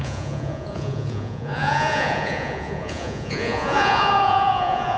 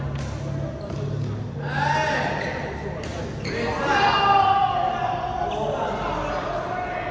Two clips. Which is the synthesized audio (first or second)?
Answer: first